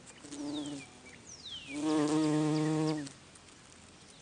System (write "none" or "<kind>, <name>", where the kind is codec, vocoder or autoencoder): none